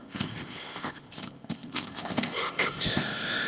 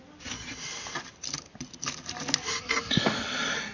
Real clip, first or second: second